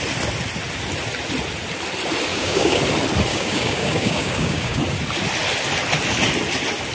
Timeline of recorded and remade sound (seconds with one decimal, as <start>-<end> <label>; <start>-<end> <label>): 0.0-2.3 recorded; 2.3-2.8 remade; 2.8-3.3 recorded; 3.3-4.8 remade; 4.8-6.9 recorded